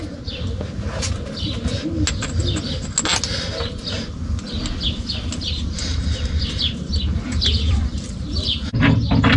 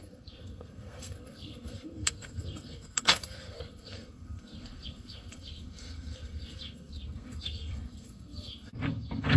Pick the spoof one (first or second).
second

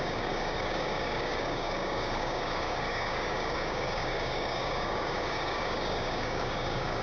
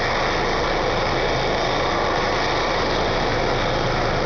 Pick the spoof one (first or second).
first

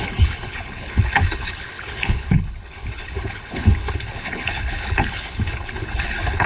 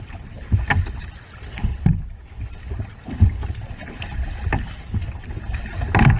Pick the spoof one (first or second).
first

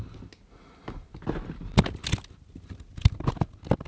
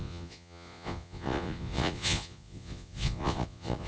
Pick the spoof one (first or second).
second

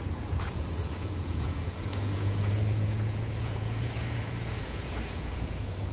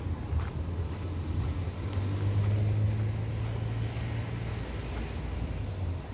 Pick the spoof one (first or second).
first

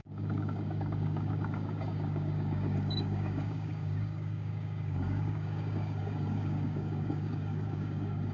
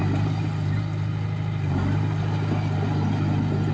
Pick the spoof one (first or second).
first